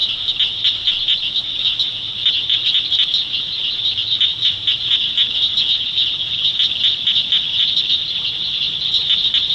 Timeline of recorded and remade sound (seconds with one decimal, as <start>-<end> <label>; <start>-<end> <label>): 0.0-9.5 recorded